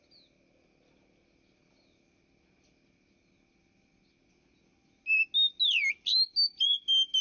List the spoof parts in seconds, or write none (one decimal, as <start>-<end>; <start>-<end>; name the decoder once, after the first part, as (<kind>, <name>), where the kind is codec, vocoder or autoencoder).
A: none